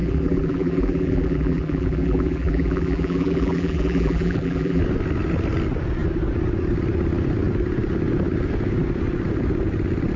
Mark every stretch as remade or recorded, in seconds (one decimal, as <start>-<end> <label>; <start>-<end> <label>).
0.0-4.8 remade; 4.8-10.2 recorded